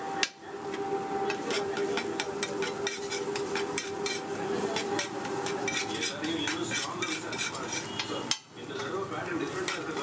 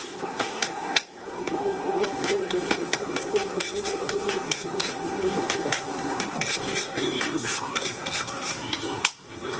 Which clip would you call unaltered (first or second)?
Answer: first